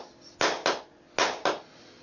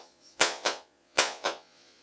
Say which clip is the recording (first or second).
first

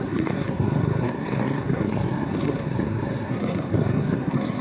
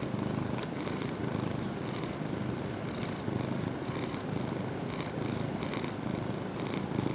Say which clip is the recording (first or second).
second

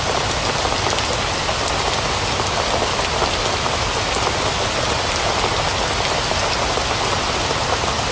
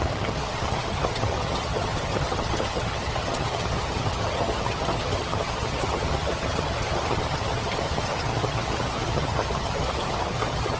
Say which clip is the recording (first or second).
first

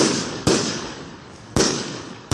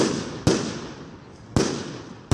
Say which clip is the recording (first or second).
second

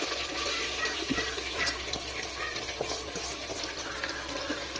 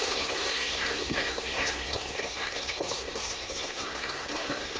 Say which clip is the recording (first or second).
first